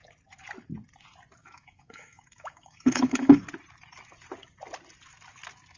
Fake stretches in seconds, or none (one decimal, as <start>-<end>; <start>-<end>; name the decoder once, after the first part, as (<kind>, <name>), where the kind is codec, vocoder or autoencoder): 1.4-3.4 (autoencoder, DAC-VAE)